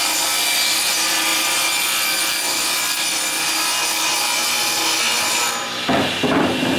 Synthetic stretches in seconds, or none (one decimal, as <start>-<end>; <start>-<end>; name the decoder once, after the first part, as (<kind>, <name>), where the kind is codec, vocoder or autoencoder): none